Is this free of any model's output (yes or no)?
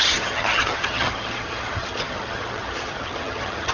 no